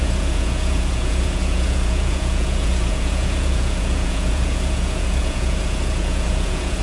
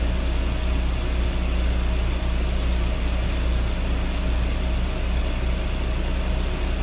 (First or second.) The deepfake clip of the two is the first